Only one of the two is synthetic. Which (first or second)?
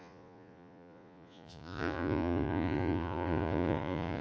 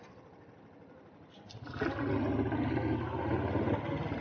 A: first